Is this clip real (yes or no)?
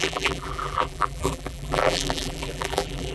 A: no